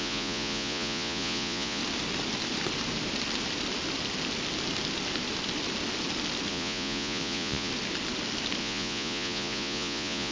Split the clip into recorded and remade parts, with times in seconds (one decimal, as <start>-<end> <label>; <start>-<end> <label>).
0.0-1.8 remade; 1.8-6.5 recorded; 6.5-7.7 remade; 7.7-8.6 recorded; 8.6-10.3 remade